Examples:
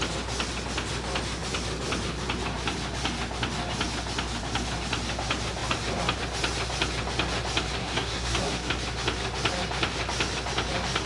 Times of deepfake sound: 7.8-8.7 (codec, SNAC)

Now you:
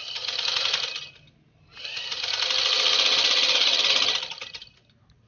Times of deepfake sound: none

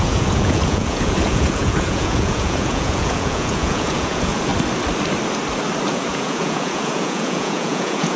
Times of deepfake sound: 0.0-4.5 (vocoder, Vocos); 5.9-8.2